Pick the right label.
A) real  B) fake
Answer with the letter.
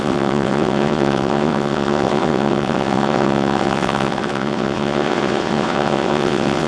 B